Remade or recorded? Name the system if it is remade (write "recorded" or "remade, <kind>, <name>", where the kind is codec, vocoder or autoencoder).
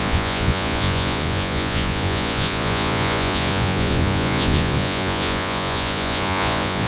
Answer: remade, vocoder, Vocos